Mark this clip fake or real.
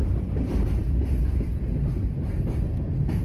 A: real